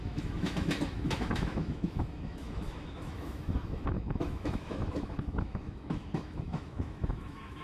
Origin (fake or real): fake